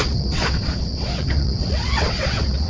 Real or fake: fake